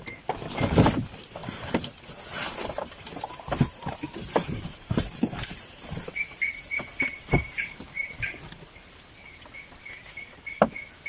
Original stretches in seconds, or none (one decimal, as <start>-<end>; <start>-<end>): 0.0-4.4; 9.0-10.0; 10.6-11.1